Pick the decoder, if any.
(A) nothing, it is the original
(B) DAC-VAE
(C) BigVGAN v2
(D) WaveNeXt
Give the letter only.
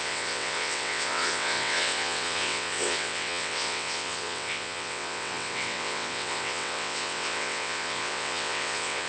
D